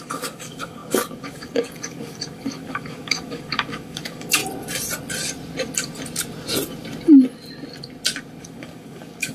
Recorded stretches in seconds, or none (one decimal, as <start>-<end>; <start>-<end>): 4.4-8.4